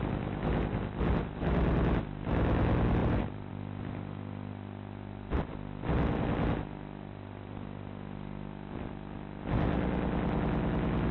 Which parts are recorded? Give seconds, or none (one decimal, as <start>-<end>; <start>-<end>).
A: 0.0-3.0; 3.5-11.1